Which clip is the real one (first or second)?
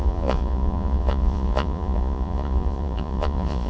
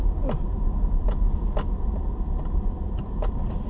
second